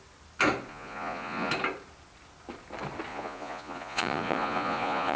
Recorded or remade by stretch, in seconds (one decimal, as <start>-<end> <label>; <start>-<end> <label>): 0.0-0.7 recorded; 0.7-1.5 remade; 1.5-3.1 recorded; 3.1-5.2 remade